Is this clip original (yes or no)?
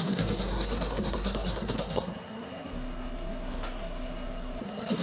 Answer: no